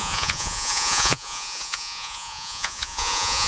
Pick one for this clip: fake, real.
fake